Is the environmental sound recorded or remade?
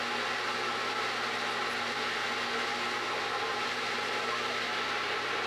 recorded